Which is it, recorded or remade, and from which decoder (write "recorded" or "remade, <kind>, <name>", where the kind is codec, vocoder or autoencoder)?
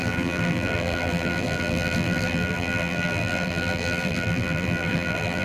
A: remade, vocoder, BigVGAN v2